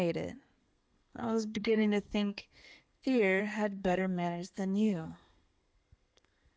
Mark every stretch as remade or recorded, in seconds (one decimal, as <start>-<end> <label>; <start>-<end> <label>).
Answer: 0.0-0.6 recorded; 0.6-3.4 remade; 3.4-3.8 recorded; 3.8-6.6 remade